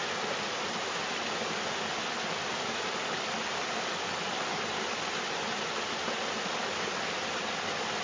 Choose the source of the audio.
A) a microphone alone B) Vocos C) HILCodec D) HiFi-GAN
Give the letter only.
A